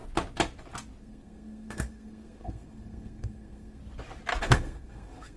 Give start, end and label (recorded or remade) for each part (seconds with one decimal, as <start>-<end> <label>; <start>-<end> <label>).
0.0-1.0 recorded; 1.0-3.8 remade; 3.8-4.4 recorded; 4.4-5.4 remade